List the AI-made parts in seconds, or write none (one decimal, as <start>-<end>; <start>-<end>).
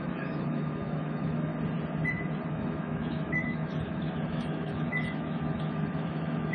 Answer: 0.0-1.5; 2.5-6.5